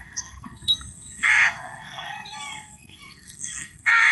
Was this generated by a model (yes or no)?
yes